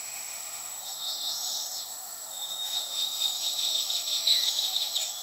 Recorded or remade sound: remade